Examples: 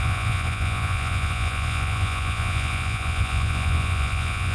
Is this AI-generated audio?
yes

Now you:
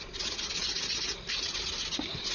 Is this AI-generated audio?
no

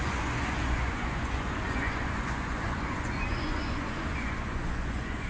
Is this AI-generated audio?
yes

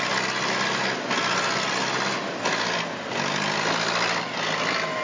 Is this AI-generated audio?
no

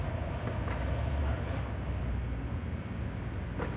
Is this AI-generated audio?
no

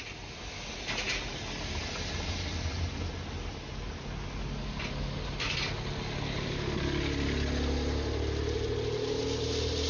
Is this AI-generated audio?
no